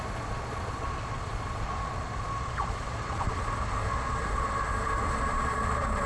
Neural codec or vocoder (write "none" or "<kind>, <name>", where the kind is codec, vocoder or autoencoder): vocoder, Vocos